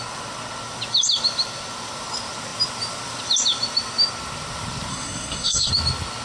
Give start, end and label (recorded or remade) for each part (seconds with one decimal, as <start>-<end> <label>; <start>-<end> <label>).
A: 0.0-4.9 recorded; 4.9-5.7 remade; 5.7-6.2 recorded